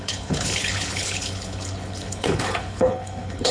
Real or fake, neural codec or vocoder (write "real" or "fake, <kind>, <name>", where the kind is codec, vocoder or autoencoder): fake, codec, HILCodec